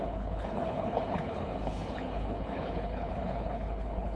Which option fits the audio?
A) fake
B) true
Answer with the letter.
A